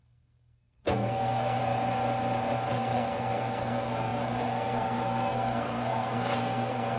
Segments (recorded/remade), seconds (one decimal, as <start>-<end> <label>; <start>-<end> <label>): 0.0-1.6 remade; 1.6-2.7 recorded; 2.7-7.0 remade